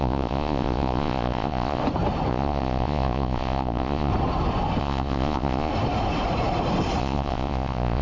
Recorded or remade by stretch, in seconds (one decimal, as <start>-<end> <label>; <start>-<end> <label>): 0.0-1.8 remade; 1.8-2.3 recorded; 2.3-4.1 remade; 4.1-4.8 recorded; 4.8-5.7 remade; 5.7-7.0 recorded; 7.0-8.0 remade